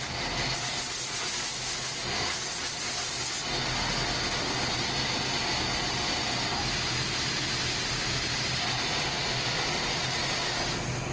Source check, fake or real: real